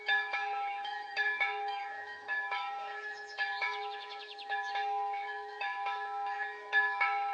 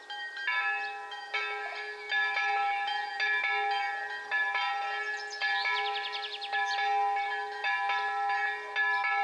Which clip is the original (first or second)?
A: second